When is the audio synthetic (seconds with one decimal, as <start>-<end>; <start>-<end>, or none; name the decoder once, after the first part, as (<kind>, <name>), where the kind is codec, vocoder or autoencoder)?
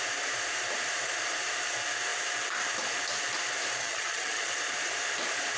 3.8-4.5 (vocoder, HiFi-GAN)